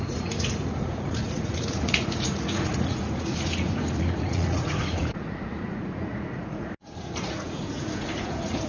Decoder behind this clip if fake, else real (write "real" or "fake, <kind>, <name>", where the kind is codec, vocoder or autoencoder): fake, vocoder, Vocos